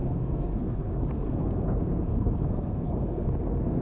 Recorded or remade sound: remade